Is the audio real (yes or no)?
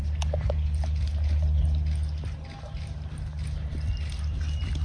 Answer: yes